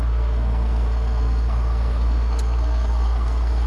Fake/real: fake